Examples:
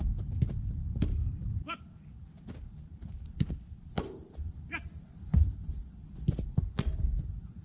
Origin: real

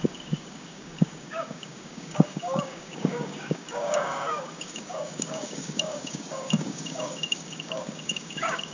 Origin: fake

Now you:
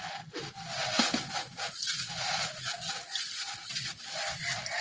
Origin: real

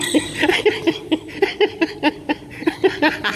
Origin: real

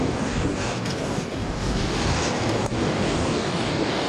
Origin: fake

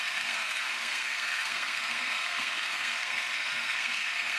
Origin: fake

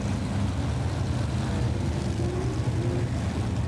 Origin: real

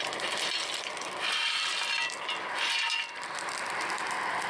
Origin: fake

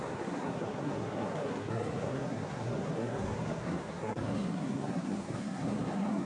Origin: fake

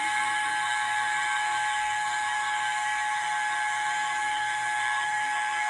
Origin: fake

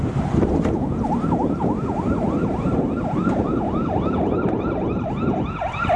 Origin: fake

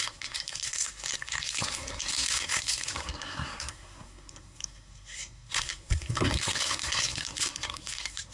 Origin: fake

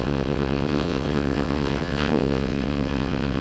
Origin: fake